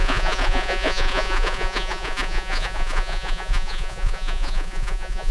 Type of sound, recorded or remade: remade